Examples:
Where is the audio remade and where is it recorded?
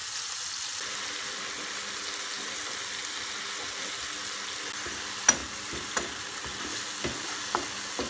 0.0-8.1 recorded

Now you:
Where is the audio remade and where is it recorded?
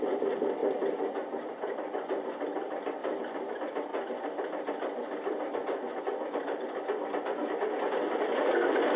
0.0-3.0 recorded; 3.0-3.5 remade; 3.5-9.0 recorded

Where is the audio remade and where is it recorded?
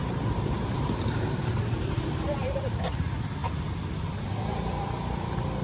0.0-2.6 remade; 2.6-5.6 recorded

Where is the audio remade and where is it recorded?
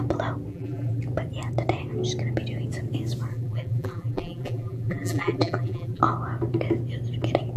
0.0-0.5 recorded; 0.5-1.0 remade; 1.0-3.3 recorded; 3.3-6.0 remade; 6.0-7.6 recorded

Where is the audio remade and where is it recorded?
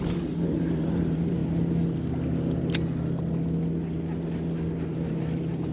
0.0-1.4 remade; 1.4-4.8 recorded; 4.8-5.7 remade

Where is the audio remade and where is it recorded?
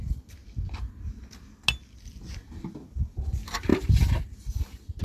0.0-3.7 recorded; 3.7-5.0 remade